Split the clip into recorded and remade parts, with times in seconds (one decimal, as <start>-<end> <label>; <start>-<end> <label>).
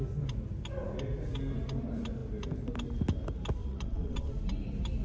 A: 0.0-3.6 recorded; 3.6-4.3 remade; 4.3-5.0 recorded